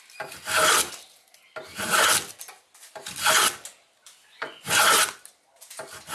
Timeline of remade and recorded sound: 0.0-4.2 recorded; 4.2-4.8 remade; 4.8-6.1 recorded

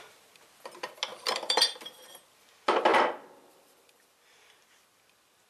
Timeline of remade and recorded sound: 0.0-1.1 recorded; 1.1-1.8 remade; 1.8-5.5 recorded

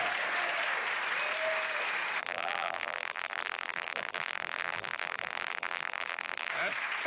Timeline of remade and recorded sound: 0.0-2.2 recorded; 2.2-6.5 remade; 6.5-7.1 recorded

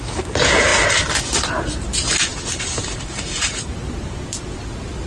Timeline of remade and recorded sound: 0.0-2.3 recorded; 2.3-3.7 remade; 3.7-5.1 recorded

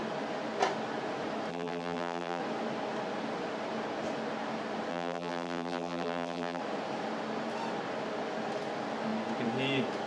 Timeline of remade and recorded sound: 0.0-1.5 recorded; 1.5-2.4 remade; 2.4-4.9 recorded; 4.9-6.6 remade; 6.6-10.1 recorded

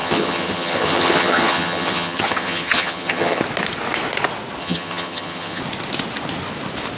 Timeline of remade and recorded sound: 0.0-3.4 remade; 3.4-4.6 recorded; 4.6-5.6 remade; 5.6-7.0 recorded